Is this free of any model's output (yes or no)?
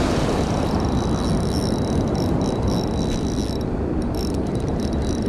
yes